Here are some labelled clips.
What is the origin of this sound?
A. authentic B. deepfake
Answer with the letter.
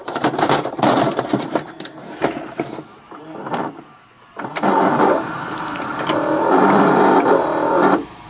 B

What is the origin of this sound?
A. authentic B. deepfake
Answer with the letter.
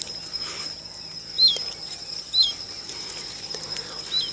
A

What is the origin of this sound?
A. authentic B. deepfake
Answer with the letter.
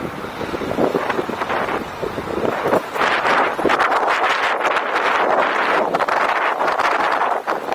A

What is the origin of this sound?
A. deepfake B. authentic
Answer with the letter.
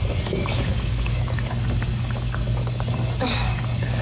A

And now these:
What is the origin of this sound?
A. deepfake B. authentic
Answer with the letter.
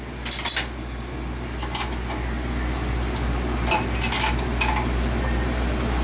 B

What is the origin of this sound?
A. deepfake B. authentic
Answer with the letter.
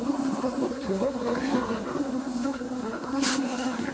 A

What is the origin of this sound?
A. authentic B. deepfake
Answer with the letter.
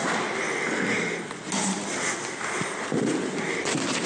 A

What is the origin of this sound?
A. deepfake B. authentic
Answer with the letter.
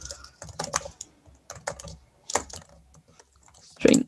B